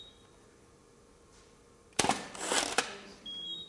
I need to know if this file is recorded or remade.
remade